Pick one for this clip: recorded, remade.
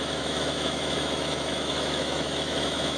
remade